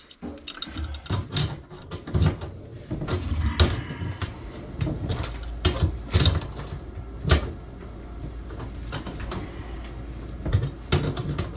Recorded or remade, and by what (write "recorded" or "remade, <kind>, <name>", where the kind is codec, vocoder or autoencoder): recorded